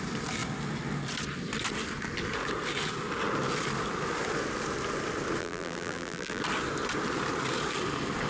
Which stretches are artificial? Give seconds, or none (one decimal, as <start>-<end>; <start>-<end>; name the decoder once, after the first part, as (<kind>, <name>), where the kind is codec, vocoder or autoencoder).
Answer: 5.4-6.4 (vocoder, BigVGAN v2)